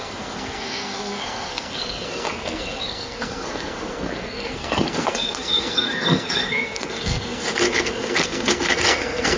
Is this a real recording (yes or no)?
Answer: no